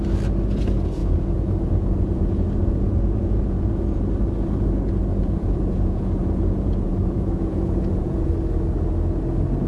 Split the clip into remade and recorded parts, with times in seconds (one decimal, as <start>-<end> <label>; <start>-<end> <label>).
0.0-1.0 recorded; 1.0-4.0 remade; 4.0-5.1 recorded; 5.1-8.3 remade; 8.3-9.7 recorded